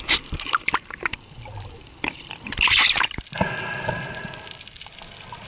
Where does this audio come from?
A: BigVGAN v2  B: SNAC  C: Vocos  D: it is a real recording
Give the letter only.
A